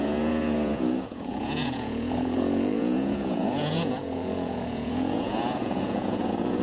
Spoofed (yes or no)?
yes